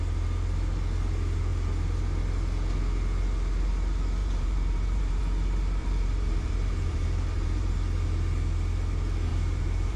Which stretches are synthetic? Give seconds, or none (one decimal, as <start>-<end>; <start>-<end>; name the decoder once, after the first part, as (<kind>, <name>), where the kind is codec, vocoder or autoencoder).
4.2-5.2 (vocoder, BigVGAN v2); 5.8-7.7; 9.3-10.0

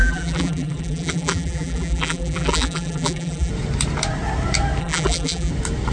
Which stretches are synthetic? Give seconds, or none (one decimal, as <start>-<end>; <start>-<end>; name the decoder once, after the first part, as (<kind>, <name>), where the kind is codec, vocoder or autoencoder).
0.0-3.5 (vocoder, BigVGAN v2); 4.8-5.5